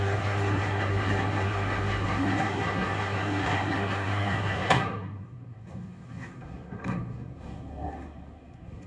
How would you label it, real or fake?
fake